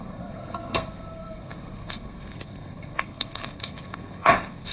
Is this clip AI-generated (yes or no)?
yes